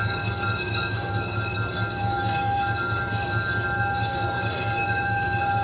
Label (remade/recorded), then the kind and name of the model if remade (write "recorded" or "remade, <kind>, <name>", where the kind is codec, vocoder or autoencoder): remade, codec, DAC